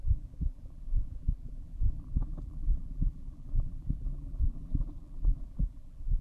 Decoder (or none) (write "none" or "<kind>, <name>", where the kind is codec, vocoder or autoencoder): vocoder, BigVGAN v2